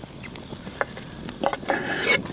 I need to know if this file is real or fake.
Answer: real